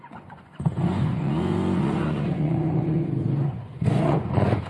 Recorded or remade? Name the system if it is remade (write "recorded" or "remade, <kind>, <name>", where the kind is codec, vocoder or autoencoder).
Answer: remade, vocoder, Vocos